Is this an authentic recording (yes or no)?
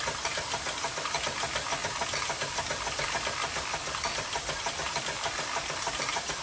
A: yes